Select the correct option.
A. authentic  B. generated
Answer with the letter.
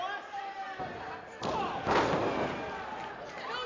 A